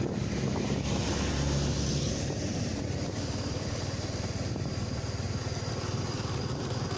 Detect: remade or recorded recorded